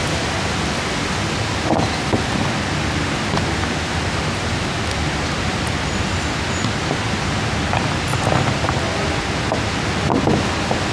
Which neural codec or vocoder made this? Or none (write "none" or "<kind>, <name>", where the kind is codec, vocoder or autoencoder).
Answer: none